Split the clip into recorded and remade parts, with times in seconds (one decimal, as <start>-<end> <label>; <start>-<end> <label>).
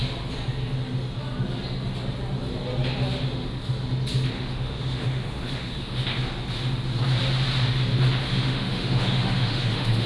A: 0.0-4.3 recorded; 4.3-6.1 remade; 6.1-8.2 recorded; 8.2-10.1 remade